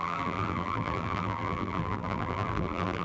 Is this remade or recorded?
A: remade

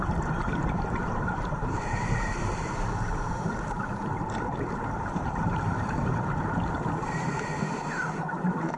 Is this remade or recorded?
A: remade